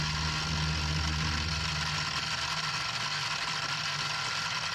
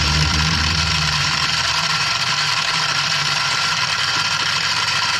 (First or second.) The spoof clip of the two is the second